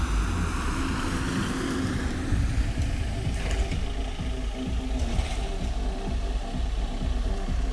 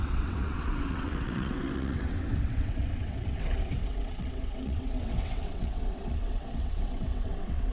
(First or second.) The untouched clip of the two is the first